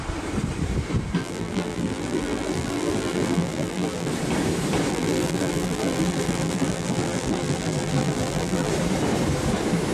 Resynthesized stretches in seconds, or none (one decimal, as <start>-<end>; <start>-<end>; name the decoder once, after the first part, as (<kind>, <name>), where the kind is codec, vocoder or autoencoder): 1.2-4.1 (vocoder, BigVGAN v2); 4.9-8.7

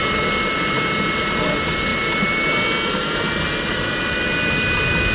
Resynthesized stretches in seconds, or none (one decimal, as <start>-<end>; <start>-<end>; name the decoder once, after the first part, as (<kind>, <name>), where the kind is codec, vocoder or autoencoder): none

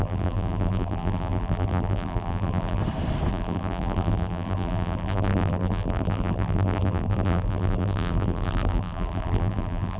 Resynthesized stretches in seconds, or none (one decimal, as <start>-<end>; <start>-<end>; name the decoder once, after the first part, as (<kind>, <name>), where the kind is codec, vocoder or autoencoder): 0.0-2.8 (vocoder, BigVGAN v2); 3.3-10.0

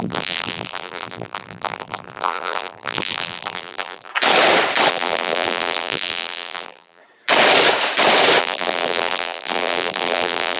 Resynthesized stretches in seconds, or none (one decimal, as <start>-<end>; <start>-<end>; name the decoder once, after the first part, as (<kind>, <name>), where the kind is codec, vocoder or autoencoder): 0.0-4.1 (vocoder, BigVGAN v2); 4.9-7.0; 8.4-10.6

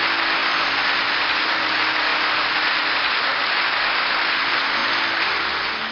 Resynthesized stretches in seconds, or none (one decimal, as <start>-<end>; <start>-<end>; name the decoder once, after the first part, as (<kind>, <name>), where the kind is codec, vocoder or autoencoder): 0.4-1.6 (vocoder, BigVGAN v2); 4.8-5.9

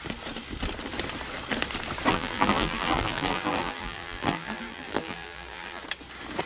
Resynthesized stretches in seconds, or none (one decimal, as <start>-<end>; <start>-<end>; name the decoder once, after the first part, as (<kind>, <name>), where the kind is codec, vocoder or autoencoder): 2.1-5.8 (vocoder, BigVGAN v2)